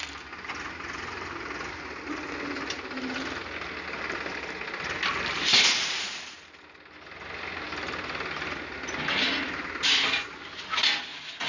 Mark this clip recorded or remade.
recorded